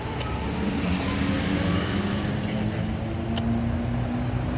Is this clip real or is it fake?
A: real